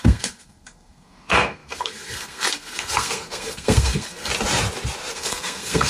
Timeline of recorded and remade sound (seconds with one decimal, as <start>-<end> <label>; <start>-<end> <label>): 0.0-4.3 remade; 4.3-5.1 recorded; 5.1-5.9 remade